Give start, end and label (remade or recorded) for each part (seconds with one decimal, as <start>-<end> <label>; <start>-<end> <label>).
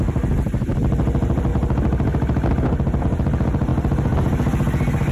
0.0-1.5 remade; 1.5-3.0 recorded; 3.0-3.7 remade; 3.7-5.1 recorded